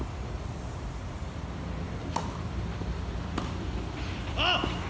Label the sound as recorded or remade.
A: remade